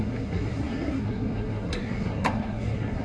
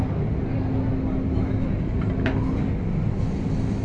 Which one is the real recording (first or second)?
second